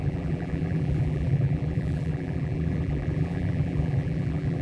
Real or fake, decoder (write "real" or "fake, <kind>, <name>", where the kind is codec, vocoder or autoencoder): fake, vocoder, BigVGAN v2